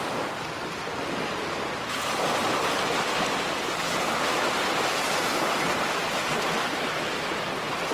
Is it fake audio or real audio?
real